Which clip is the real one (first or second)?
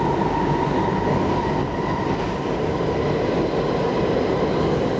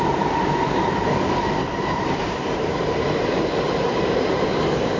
first